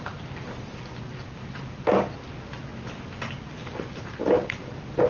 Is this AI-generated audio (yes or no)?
no